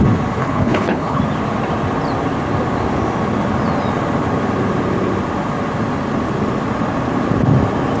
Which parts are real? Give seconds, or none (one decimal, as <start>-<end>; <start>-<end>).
0.0-0.4; 1.2-8.0